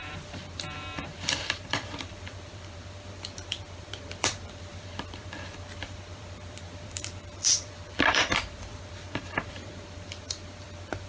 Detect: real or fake fake